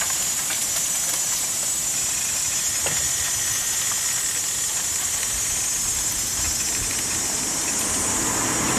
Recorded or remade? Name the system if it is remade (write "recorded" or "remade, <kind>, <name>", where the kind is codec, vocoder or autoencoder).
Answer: recorded